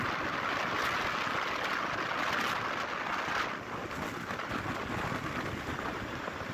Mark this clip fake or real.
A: real